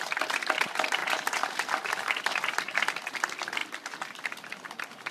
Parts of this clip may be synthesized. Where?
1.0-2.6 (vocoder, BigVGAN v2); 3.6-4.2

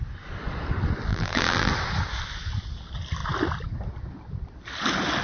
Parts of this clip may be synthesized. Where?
1.1-1.7 (vocoder, BigVGAN v2)